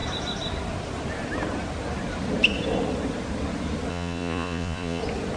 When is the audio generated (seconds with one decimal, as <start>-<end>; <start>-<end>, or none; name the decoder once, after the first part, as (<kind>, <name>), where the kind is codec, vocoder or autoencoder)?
3.9-5.0 (vocoder, Vocos)